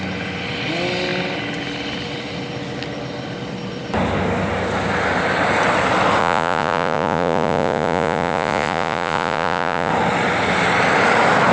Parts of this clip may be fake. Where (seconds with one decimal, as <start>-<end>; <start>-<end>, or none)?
6.2-9.9